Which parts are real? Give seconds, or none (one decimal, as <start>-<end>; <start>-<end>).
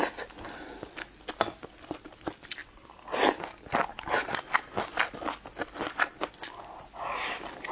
0.0-7.7